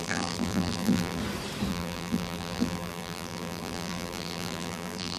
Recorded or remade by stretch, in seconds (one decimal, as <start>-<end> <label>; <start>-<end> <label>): 0.0-1.2 remade; 1.2-1.7 recorded; 1.7-5.2 remade